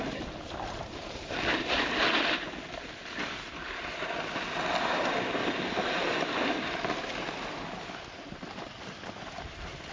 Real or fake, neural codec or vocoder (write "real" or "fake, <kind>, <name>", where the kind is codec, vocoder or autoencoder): real